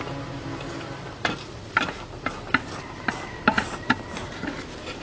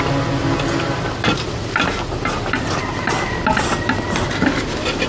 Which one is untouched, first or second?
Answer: second